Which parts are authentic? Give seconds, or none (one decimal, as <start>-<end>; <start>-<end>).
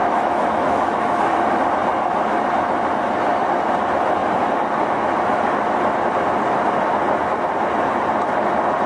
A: 1.2-8.9